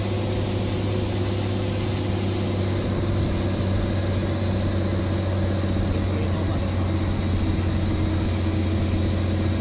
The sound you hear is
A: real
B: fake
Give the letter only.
A